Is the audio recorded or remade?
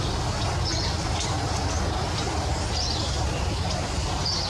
recorded